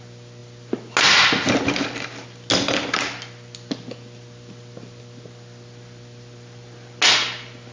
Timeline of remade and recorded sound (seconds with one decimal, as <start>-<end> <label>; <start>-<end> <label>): 0.0-7.7 recorded